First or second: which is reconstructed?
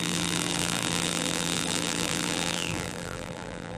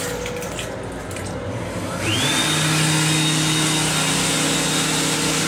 first